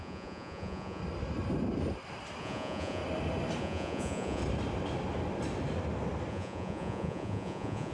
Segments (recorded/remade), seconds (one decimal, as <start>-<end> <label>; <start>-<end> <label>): 0.0-1.0 remade; 1.0-2.4 recorded; 2.4-3.0 remade; 3.0-3.6 recorded; 3.6-4.4 remade; 4.4-6.3 recorded; 6.3-7.9 remade